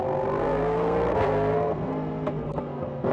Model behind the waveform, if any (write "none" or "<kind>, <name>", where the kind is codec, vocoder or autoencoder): codec, SNAC